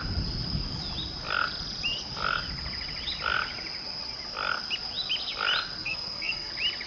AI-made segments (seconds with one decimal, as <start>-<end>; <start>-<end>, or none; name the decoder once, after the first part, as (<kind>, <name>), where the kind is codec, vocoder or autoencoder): 5.8-6.5 (codec, SNAC)